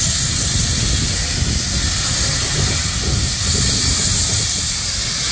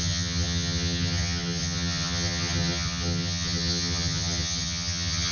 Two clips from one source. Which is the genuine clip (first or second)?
first